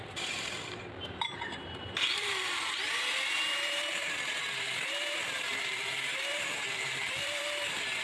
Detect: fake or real fake